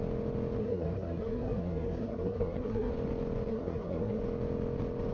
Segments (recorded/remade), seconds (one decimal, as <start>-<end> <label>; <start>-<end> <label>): 0.0-0.6 recorded; 0.6-2.9 remade; 2.9-3.5 recorded; 3.5-4.2 remade; 4.2-5.1 recorded